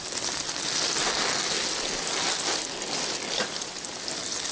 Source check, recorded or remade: recorded